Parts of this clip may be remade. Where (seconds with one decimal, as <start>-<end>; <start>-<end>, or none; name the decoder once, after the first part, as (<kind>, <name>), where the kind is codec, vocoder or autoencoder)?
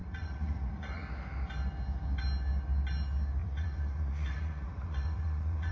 0.0-1.0 (vocoder, Vocos); 3.4-5.7